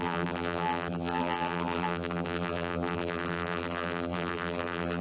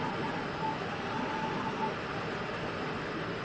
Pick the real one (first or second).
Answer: second